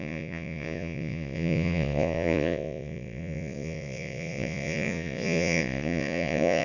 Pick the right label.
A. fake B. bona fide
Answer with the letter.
A